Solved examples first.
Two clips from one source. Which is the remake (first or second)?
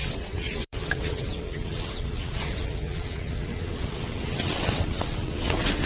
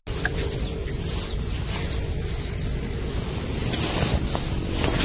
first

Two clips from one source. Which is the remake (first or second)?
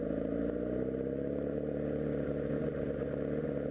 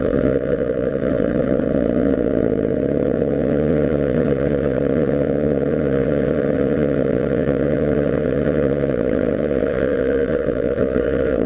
second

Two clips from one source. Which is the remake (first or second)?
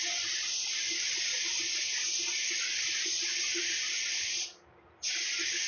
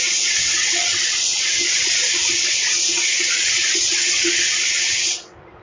second